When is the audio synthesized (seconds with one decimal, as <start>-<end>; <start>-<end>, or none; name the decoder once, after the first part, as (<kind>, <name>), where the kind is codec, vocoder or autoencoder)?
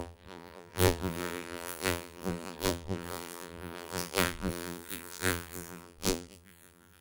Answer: 0.0-7.0 (vocoder, BigVGAN v2)